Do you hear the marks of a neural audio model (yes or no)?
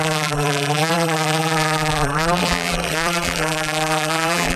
yes